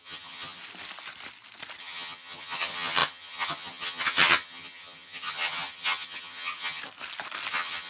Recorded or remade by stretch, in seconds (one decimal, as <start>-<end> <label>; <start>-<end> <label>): 0.0-0.6 remade; 0.6-1.8 recorded; 1.8-6.8 remade; 6.8-7.5 recorded; 7.5-7.9 remade